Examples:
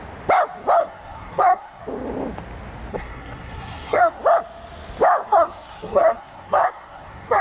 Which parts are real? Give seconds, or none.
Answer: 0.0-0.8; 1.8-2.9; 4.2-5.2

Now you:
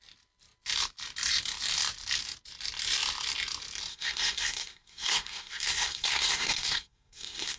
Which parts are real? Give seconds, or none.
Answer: 0.0-3.9

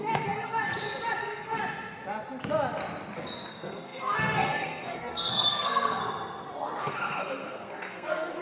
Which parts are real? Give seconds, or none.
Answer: 0.7-1.2; 1.6-3.5; 6.0-6.8

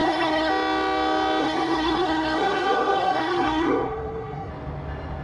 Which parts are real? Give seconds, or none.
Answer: 0.5-1.4; 4.5-5.2

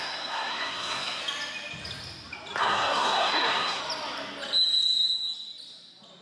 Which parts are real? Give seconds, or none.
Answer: 1.2-2.6; 3.8-6.2